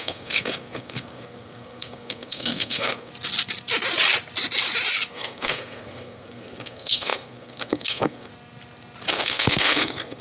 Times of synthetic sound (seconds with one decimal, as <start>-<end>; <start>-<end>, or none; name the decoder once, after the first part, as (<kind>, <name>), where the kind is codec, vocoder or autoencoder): 0.0-3.1 (codec, SNAC); 5.1-8.3; 9.1-10.2